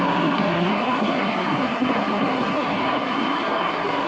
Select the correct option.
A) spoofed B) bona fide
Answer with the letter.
A